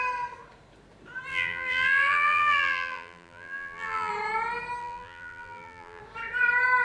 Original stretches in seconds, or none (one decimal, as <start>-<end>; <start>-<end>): 0.0-1.3; 4.1-4.8; 6.0-6.8